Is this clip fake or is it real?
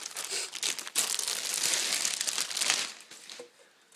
real